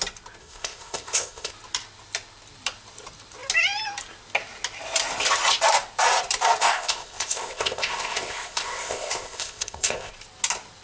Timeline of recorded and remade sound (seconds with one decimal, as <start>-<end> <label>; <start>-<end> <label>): 0.0-0.4 recorded; 0.4-1.5 remade; 1.5-6.6 recorded; 6.6-10.1 remade; 10.1-10.8 recorded